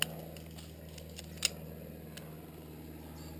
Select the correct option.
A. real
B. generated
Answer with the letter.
A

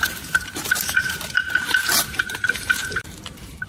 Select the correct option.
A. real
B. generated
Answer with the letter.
B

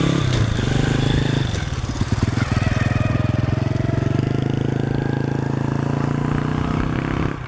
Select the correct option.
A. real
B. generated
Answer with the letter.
A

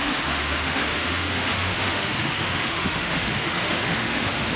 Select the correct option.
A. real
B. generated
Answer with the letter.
B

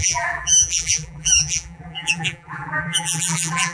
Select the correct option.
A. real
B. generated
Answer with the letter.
B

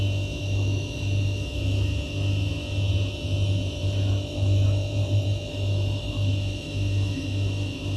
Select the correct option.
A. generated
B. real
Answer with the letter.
A